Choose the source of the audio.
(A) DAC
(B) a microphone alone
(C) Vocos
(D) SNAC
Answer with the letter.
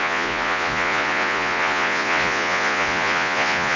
C